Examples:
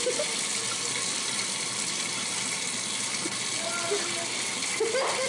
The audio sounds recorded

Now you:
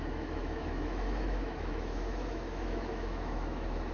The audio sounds remade